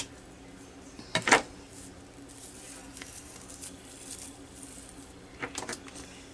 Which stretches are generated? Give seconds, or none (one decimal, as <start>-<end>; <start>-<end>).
2.8-3.4

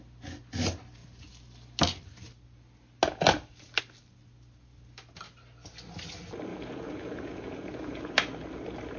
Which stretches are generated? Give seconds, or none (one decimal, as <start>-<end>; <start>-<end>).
6.5-8.1

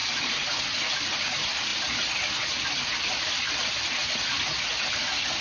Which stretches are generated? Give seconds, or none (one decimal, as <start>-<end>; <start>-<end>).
none

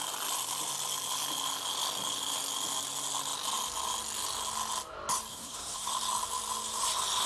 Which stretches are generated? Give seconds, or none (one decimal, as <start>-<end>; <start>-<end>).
5.3-5.9

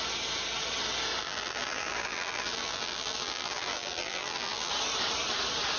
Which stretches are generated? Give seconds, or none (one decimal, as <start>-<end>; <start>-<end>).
1.2-4.7

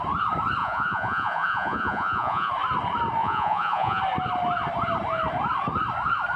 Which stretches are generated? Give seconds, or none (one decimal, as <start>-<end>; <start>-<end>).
0.6-2.5; 3.2-4.0

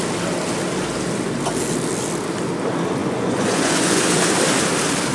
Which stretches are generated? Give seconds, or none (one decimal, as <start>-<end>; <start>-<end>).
3.0-4.2